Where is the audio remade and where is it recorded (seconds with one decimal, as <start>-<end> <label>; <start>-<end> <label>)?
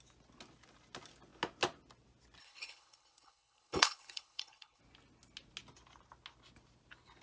0.0-2.4 recorded; 2.4-4.8 remade; 4.8-7.2 recorded